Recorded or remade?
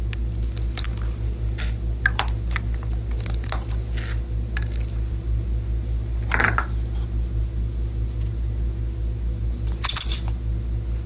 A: recorded